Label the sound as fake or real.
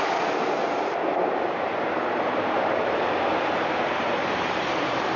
fake